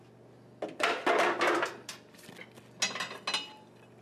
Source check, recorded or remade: recorded